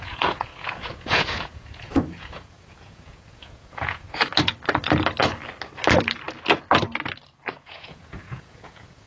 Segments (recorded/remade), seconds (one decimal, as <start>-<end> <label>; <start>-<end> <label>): 0.0-4.3 remade; 4.3-7.4 recorded; 7.4-9.1 remade